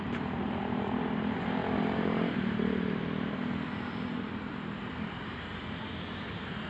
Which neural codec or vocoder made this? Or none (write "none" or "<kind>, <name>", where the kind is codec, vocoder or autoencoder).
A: vocoder, BigVGAN v2